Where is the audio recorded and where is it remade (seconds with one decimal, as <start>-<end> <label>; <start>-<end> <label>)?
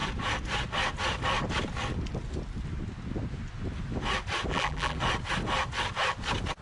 0.0-4.5 recorded; 4.5-5.0 remade; 5.0-6.6 recorded